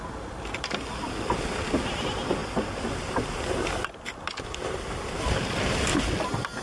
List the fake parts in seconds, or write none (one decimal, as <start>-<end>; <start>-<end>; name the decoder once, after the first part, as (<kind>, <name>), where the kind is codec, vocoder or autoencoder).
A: none